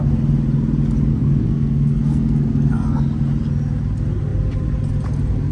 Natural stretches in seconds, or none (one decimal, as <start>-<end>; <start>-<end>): 0.0-1.1; 3.0-5.5

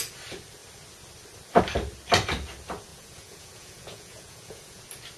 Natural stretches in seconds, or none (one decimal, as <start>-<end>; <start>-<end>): 0.0-2.9; 4.8-5.2

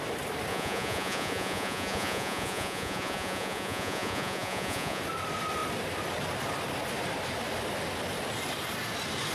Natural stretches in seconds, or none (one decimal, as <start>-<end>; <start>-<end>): 0.0-0.5; 5.0-9.3

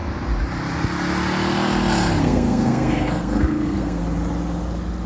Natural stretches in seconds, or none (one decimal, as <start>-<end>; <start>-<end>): 0.0-2.2; 4.0-5.1

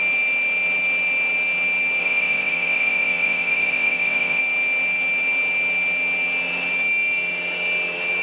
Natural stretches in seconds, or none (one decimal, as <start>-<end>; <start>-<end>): 0.0-2.0; 4.4-8.2